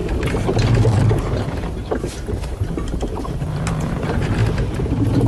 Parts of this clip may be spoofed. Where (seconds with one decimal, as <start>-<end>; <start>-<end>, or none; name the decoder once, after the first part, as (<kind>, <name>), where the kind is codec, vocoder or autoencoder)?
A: 1.1-5.3 (vocoder, BigVGAN v2)